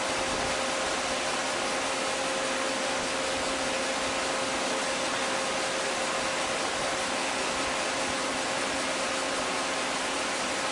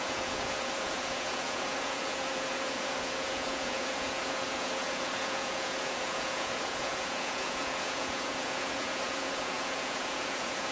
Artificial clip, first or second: second